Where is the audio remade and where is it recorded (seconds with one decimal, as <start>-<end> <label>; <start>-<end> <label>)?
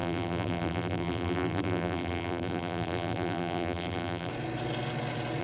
0.0-4.3 remade; 4.3-5.4 recorded